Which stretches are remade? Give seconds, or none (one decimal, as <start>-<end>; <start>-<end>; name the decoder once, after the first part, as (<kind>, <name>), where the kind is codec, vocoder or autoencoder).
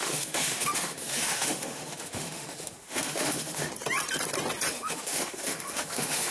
0.0-3.7 (autoencoder, DAC-VAE); 4.7-6.3